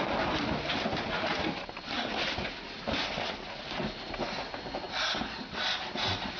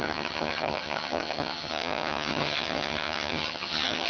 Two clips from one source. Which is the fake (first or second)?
second